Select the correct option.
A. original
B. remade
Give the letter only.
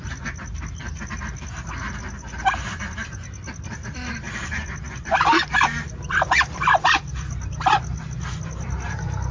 A